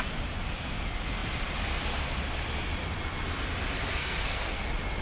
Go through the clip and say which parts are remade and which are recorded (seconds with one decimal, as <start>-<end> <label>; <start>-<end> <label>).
0.0-4.0 recorded; 4.0-4.6 remade; 4.6-5.0 recorded